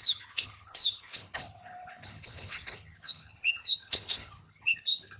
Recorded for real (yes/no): no